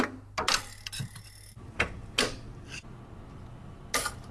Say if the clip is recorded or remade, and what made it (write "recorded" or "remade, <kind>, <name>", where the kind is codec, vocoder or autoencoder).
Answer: recorded